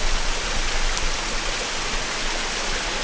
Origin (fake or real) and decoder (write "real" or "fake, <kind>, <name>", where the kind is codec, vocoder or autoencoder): real